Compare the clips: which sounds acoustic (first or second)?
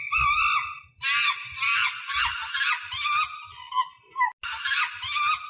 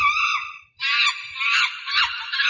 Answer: first